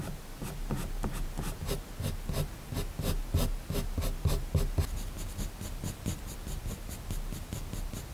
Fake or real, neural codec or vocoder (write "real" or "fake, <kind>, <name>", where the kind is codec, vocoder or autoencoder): real